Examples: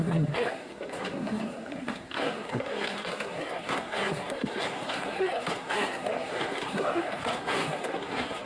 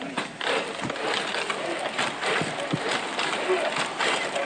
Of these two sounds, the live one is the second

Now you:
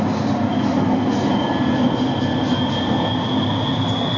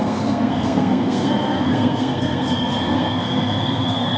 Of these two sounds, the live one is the first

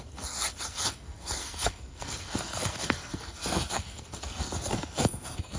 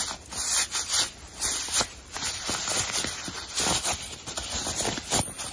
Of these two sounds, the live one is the second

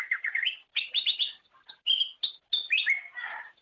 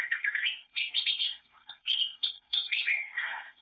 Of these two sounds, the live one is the first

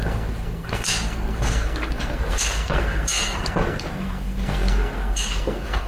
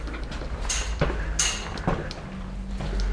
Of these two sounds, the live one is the second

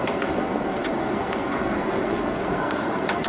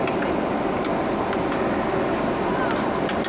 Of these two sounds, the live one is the second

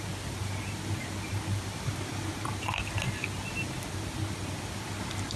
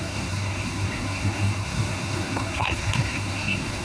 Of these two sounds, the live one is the first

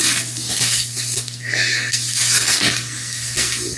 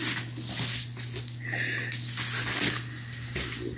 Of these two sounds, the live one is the second